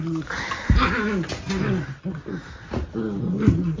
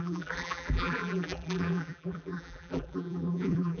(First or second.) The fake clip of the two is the second